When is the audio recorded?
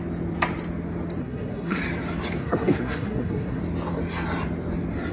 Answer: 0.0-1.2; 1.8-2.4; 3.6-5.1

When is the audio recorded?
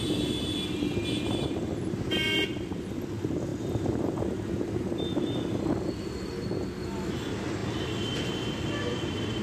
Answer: 0.0-1.0; 1.7-9.4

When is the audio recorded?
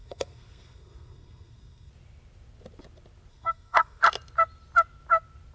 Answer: 1.9-3.3; 4.0-5.5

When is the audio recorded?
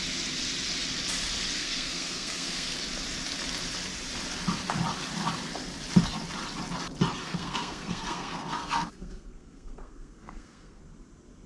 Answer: 0.0-1.6; 2.7-7.2; 10.8-11.5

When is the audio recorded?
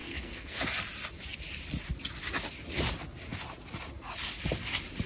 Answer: 0.6-5.1